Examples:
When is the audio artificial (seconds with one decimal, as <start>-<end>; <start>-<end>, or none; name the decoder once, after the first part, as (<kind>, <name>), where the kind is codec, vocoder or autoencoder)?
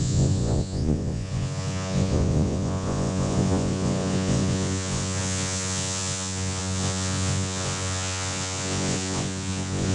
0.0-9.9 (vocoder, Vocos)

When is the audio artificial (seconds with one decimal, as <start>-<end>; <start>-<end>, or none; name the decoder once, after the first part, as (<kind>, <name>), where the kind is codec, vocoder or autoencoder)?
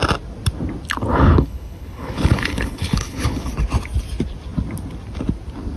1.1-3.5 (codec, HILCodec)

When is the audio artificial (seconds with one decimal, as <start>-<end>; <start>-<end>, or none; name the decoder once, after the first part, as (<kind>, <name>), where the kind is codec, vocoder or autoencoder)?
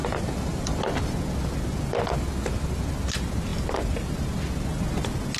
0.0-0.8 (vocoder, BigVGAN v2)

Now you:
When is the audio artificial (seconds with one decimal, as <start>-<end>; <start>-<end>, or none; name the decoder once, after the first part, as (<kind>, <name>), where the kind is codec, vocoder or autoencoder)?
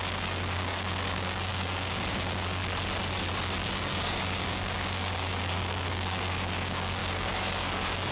0.0-2.6 (codec, DAC); 3.6-8.1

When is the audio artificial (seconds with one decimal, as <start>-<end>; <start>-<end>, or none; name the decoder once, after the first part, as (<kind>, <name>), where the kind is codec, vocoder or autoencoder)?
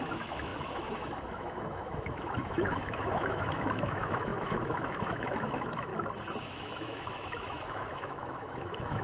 0.0-5.9 (autoencoder, DAC-VAE); 6.4-9.0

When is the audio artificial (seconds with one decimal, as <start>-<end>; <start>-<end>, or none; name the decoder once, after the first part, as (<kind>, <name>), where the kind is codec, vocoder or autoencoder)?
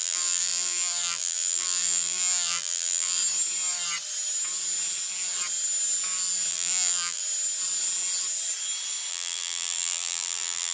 0.0-3.2 (vocoder, BigVGAN v2); 6.5-7.2; 9.1-10.7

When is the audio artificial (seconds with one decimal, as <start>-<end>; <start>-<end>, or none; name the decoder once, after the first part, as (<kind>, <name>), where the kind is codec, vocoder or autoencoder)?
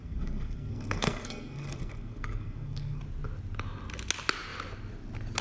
0.0-3.0 (codec, SNAC)